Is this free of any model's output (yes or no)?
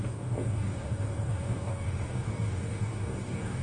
no